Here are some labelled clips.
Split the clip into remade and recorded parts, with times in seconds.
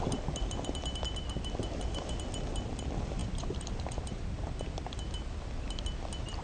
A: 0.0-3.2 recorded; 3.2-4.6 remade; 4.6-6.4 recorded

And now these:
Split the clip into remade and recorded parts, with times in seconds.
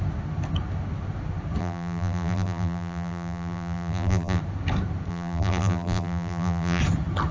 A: 0.0-1.6 recorded; 1.6-4.4 remade; 4.4-5.1 recorded; 5.1-6.8 remade; 6.8-7.3 recorded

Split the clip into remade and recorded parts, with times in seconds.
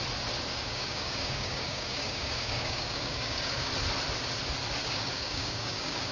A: 0.0-0.5 recorded; 0.5-3.7 remade; 3.7-4.8 recorded; 4.8-6.1 remade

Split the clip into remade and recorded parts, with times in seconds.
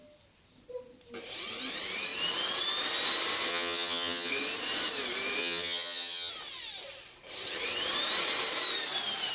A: 0.0-3.5 recorded; 3.5-4.3 remade; 4.3-5.4 recorded; 5.4-6.3 remade; 6.3-9.3 recorded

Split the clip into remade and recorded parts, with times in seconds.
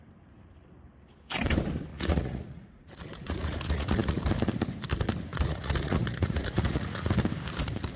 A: 0.0-1.9 recorded; 1.9-4.2 remade; 4.2-5.3 recorded; 5.3-7.1 remade; 7.1-8.0 recorded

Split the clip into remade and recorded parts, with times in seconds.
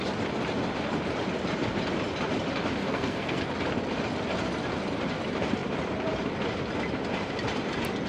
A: 0.0-2.8 recorded; 2.8-3.4 remade; 3.4-8.1 recorded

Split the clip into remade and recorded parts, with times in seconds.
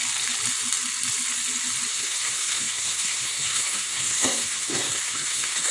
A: 0.0-1.9 recorded; 1.9-5.7 remade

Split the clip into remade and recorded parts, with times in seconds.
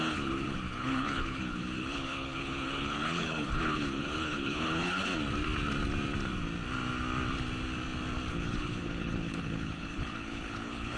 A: 0.0-5.1 remade; 5.1-8.3 recorded; 8.3-11.0 remade